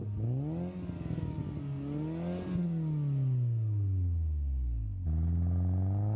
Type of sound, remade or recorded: recorded